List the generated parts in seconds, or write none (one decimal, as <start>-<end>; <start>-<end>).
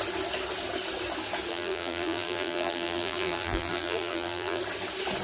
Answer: 1.5-4.6